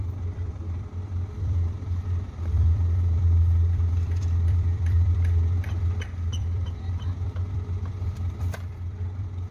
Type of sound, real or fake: fake